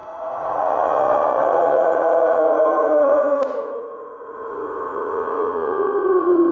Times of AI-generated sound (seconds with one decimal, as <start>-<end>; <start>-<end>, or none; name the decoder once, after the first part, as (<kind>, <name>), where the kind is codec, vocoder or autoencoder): 0.0-6.5 (vocoder, Vocos)